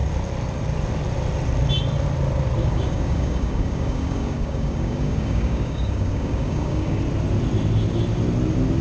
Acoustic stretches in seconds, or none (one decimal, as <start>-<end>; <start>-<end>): 0.0-2.6; 7.0-8.8